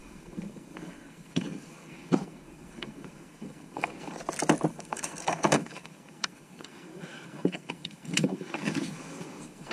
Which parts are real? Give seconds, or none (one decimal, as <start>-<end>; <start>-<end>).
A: 4.2-4.7